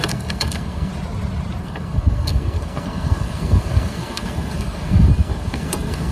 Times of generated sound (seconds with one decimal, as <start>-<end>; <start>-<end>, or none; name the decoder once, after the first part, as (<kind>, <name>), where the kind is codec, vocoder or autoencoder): 0.0-0.9 (codec, SNAC); 1.6-6.1